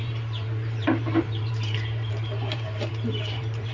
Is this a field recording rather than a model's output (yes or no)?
no